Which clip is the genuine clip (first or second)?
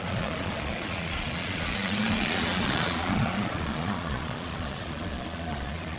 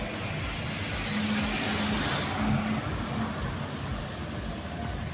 second